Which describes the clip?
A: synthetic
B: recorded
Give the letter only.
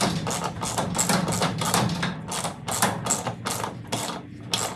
B